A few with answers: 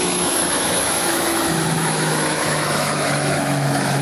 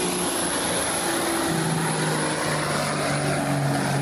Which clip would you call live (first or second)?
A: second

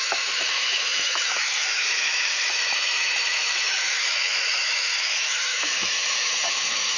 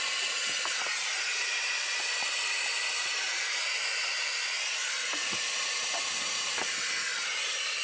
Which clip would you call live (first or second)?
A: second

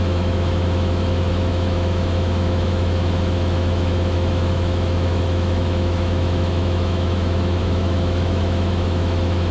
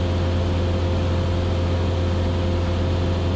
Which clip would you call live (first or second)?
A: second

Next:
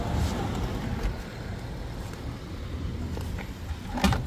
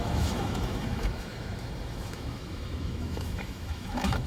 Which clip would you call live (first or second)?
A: first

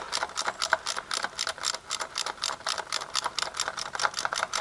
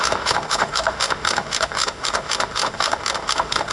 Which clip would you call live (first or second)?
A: first